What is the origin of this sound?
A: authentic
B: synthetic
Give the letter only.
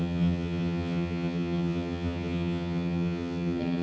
B